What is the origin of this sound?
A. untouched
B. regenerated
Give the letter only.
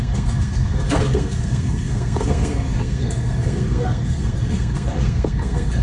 B